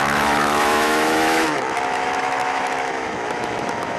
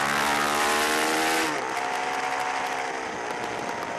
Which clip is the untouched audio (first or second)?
second